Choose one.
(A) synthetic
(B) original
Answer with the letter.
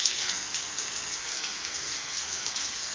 A